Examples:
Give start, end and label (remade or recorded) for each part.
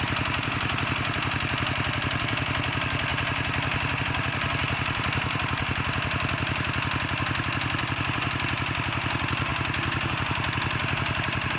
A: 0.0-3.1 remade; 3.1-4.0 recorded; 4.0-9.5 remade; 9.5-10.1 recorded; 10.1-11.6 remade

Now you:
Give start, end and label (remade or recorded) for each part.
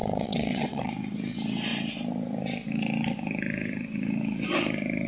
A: 0.0-0.9 remade; 0.9-5.1 recorded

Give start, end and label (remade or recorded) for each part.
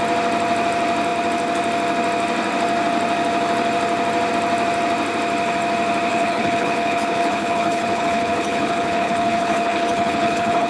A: 0.0-6.1 recorded; 6.1-10.7 remade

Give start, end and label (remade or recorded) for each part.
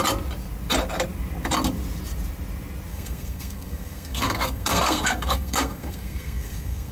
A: 0.0-2.9 recorded; 2.9-6.9 remade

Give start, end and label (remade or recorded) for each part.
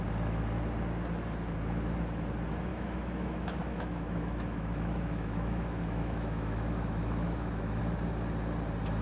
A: 0.0-2.7 recorded; 2.7-7.8 remade; 7.8-9.0 recorded